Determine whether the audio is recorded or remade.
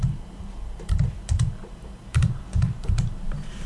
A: remade